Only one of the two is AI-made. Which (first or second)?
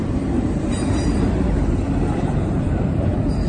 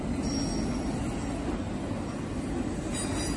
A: first